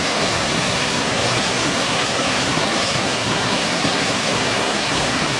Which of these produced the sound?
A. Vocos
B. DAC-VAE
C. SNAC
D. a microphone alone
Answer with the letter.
C